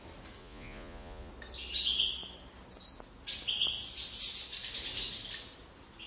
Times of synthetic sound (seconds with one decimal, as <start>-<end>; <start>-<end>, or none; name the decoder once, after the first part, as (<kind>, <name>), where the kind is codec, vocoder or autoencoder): 0.4-1.3 (vocoder, Vocos)